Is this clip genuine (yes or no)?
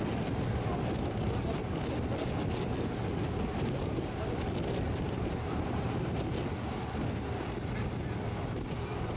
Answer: yes